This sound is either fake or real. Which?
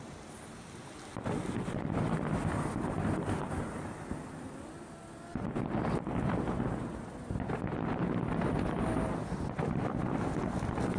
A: real